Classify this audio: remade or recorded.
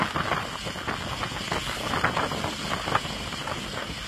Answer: recorded